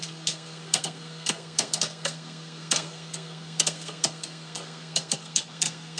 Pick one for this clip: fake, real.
fake